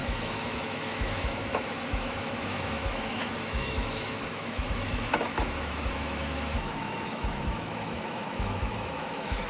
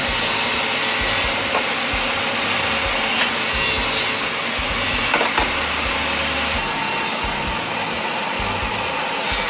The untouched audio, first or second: second